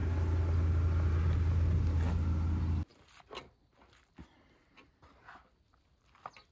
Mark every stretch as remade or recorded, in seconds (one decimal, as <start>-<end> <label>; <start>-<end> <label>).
0.0-6.5 recorded